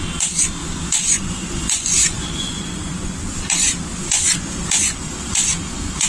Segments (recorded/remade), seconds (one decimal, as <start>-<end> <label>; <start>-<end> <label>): 0.0-0.6 recorded; 0.6-3.2 remade; 3.2-3.9 recorded; 3.9-6.1 remade